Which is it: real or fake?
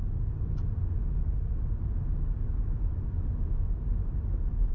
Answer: real